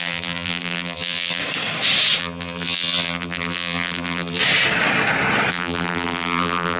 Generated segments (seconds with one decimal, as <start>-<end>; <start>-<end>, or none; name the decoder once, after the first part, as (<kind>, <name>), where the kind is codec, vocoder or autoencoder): 0.0-1.4 (vocoder, BigVGAN v2); 2.2-4.4; 5.5-6.8